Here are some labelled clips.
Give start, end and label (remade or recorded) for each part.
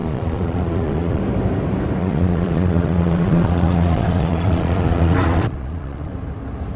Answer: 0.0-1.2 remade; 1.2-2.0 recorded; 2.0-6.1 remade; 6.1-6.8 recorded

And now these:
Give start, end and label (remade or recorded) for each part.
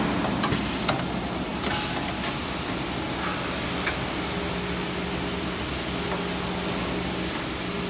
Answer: 0.0-7.9 recorded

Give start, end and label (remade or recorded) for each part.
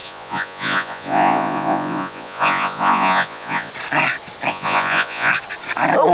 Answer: 0.0-3.7 remade; 3.7-4.5 recorded; 4.5-5.3 remade; 5.3-6.1 recorded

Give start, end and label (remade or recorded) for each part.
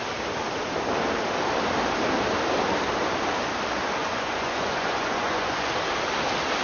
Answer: 0.0-4.0 recorded; 4.0-5.7 remade; 5.7-6.6 recorded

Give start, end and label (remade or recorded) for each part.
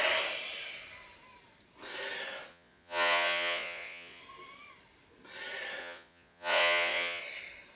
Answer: 0.0-2.5 recorded; 2.5-4.2 remade; 4.2-5.8 recorded; 5.8-7.2 remade; 7.2-7.7 recorded